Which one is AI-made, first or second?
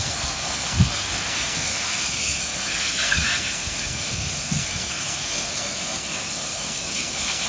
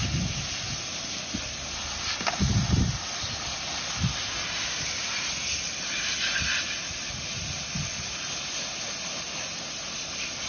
first